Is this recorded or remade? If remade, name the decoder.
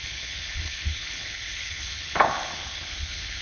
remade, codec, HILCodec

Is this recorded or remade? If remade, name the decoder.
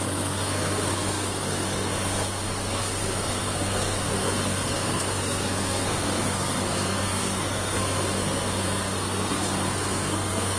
remade, codec, SNAC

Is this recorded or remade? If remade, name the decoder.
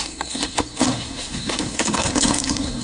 remade, codec, SNAC